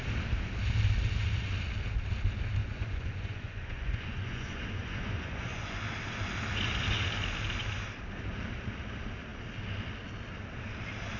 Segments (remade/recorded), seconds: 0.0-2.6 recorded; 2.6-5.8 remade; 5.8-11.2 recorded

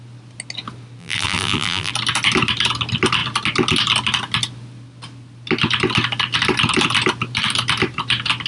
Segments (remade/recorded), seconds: 0.0-1.0 recorded; 1.0-1.9 remade; 1.9-8.5 recorded

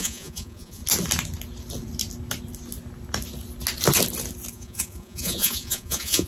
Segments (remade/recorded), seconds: 0.0-0.8 remade; 0.8-4.5 recorded; 4.5-6.3 remade

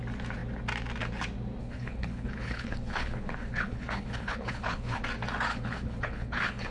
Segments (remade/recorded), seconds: 0.0-1.6 recorded; 1.6-5.0 remade; 5.0-5.5 recorded; 5.5-6.7 remade

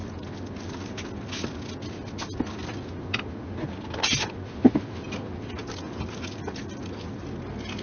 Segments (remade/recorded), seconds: 0.0-7.8 recorded

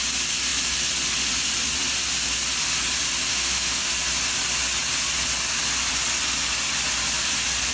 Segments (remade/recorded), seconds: 0.0-3.3 recorded; 3.3-3.9 remade; 3.9-7.7 recorded

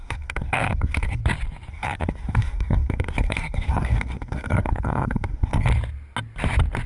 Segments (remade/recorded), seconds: 0.0-1.2 remade; 1.2-1.7 recorded; 1.7-5.7 remade; 5.7-6.9 recorded